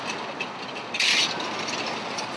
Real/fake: real